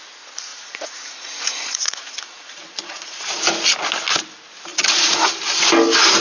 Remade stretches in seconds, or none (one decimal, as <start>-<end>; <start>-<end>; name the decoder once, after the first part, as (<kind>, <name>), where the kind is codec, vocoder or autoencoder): 0.5-3.2 (vocoder, Vocos); 4.7-5.3